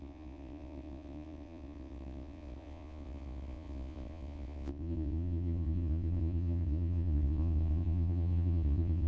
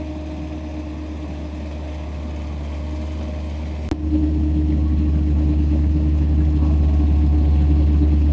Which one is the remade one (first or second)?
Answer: first